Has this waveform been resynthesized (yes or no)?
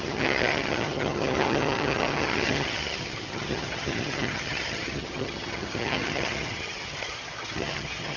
yes